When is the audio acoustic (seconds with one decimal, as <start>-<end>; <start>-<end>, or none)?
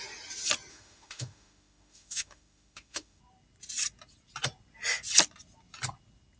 0.0-0.7; 3.2-6.4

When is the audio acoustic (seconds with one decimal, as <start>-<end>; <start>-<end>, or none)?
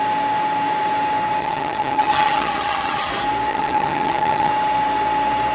0.0-1.4; 3.1-3.5; 4.5-5.5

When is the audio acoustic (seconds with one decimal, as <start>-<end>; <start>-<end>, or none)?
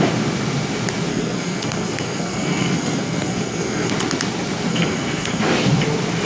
0.0-1.1; 3.9-4.7; 5.4-6.3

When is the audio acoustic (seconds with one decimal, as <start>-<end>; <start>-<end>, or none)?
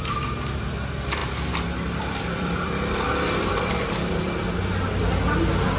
0.0-1.2; 4.5-5.8